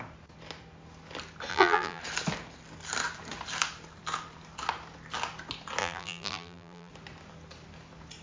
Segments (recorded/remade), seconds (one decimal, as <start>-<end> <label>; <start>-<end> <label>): 0.0-1.5 recorded; 1.5-2.0 remade; 2.0-5.8 recorded; 5.8-6.9 remade; 6.9-8.2 recorded